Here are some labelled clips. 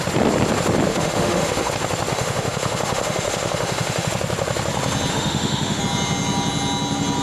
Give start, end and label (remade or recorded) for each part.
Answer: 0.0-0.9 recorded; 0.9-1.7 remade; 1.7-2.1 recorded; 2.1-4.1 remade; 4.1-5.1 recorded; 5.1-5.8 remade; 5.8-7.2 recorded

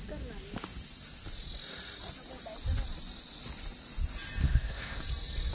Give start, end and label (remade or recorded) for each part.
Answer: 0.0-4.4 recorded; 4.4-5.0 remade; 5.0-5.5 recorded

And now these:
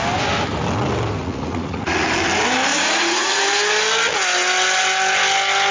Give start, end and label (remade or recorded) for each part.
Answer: 0.0-1.2 recorded; 1.2-2.1 remade; 2.1-2.7 recorded; 2.7-3.4 remade; 3.4-5.7 recorded